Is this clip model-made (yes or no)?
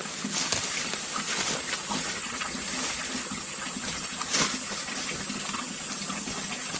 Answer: no